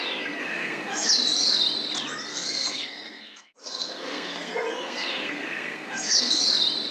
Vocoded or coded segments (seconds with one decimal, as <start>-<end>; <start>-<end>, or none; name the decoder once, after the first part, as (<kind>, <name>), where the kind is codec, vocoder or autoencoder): 0.4-1.1 (codec, SNAC); 2.3-6.4